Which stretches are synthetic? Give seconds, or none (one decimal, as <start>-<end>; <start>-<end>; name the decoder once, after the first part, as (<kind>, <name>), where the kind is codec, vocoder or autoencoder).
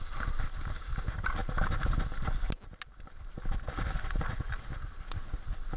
none